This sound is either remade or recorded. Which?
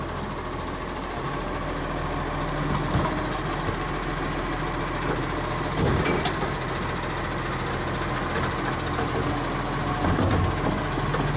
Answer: recorded